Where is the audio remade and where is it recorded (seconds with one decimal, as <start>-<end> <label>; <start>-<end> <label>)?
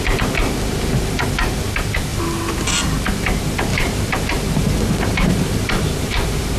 0.0-3.7 recorded; 3.7-6.6 remade